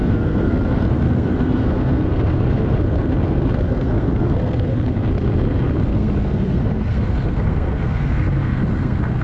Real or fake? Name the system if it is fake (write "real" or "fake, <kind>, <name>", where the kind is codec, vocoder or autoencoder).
fake, codec, SNAC